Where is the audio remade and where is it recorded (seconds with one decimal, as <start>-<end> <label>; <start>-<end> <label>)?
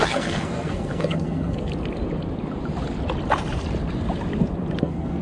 0.0-1.7 remade; 1.7-4.8 recorded; 4.8-5.2 remade